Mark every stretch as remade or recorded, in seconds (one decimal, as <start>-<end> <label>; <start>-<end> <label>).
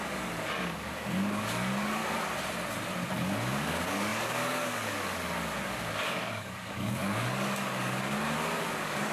0.0-2.0 remade; 2.0-3.1 recorded; 3.1-9.1 remade